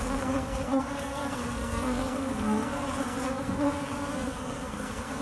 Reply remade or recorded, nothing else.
remade